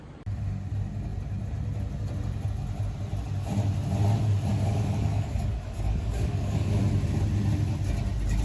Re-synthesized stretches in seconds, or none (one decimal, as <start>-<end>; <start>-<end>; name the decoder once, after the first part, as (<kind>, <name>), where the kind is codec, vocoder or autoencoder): 4.5-6.8 (codec, DAC)